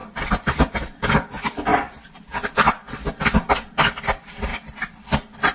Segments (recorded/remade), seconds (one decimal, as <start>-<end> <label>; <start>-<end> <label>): 0.0-0.5 remade; 0.5-1.7 recorded; 1.7-2.2 remade; 2.2-5.5 recorded